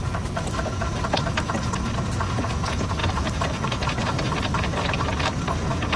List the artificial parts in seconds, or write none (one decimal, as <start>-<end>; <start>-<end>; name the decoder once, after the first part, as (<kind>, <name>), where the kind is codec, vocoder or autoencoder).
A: 0.0-1.1 (vocoder, BigVGAN v2); 3.0-5.6